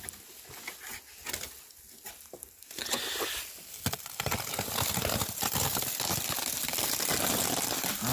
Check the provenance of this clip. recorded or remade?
recorded